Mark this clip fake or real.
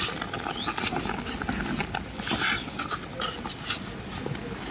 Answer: real